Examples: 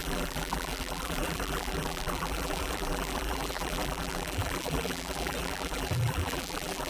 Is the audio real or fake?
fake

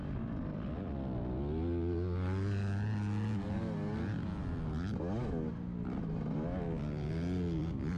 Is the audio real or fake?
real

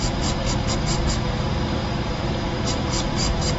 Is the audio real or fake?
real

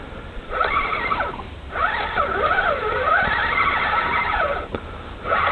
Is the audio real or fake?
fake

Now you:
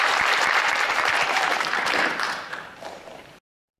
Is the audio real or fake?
fake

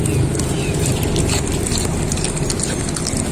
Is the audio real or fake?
real